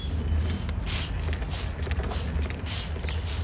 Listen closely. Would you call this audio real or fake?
real